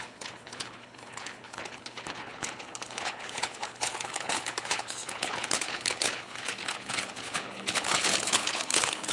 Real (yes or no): no